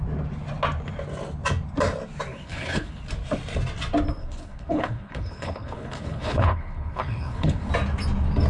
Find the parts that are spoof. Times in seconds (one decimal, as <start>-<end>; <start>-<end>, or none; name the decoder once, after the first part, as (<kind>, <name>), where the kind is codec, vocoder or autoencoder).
2.3-3.0 (codec, HILCodec); 4.2-7.7